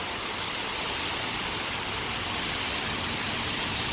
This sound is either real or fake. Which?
real